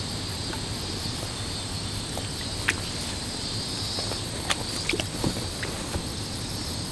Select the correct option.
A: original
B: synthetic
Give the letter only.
A